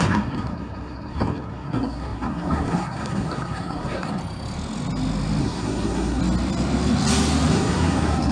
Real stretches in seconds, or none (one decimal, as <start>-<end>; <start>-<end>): 4.2-5.4; 6.2-7.5